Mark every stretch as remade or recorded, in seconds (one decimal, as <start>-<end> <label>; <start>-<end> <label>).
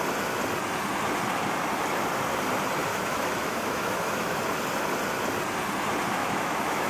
0.0-2.9 recorded; 2.9-4.4 remade; 4.4-6.2 recorded; 6.2-6.9 remade